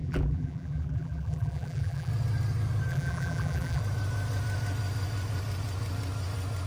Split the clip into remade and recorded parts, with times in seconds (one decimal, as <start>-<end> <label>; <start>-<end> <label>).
0.0-2.1 remade; 2.1-2.9 recorded; 2.9-3.8 remade; 3.8-6.7 recorded